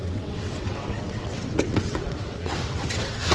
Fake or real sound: fake